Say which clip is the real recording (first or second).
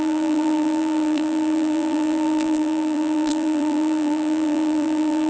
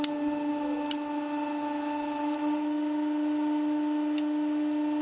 second